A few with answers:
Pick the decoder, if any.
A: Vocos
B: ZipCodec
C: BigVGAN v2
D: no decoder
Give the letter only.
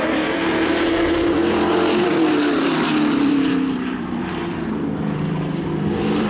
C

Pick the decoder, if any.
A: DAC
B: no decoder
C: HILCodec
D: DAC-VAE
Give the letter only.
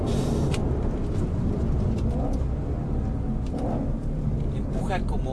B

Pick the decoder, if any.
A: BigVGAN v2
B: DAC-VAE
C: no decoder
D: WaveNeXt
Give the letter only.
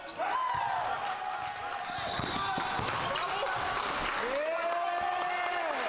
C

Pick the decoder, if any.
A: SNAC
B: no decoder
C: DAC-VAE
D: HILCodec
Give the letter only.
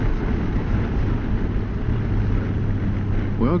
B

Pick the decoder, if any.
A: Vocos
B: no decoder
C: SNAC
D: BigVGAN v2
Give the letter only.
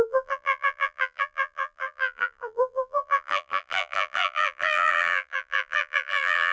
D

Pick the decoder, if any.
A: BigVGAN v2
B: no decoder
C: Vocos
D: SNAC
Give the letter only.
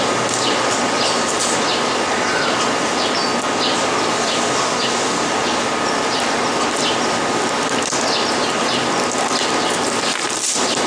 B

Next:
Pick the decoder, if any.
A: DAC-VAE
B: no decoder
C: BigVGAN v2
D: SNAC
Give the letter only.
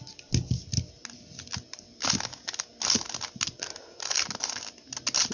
B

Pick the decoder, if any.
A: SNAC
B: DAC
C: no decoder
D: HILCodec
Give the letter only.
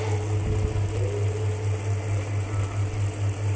C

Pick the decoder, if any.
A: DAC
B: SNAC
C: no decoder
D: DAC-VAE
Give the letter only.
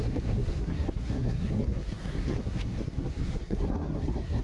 B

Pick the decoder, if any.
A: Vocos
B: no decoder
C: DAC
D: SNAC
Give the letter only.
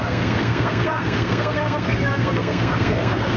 D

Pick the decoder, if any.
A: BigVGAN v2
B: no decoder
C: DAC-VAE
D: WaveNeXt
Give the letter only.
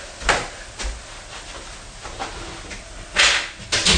B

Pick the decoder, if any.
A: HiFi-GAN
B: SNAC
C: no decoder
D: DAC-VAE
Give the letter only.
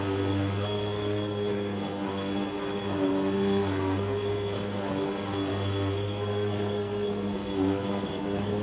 B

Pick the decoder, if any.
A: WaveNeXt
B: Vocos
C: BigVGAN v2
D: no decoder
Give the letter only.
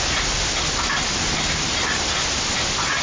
D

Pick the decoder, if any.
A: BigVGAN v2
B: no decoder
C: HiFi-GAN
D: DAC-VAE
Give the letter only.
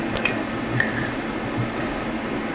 A